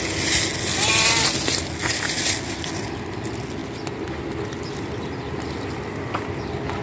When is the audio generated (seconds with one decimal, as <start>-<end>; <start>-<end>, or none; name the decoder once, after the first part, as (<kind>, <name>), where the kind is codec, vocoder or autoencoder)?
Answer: none